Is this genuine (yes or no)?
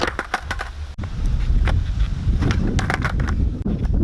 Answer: yes